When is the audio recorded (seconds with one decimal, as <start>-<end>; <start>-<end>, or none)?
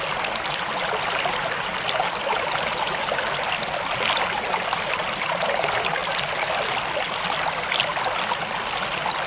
0.0-9.3